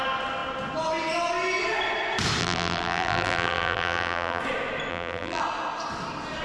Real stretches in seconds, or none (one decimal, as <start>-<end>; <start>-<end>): 0.0-2.4; 4.4-4.9; 5.4-6.4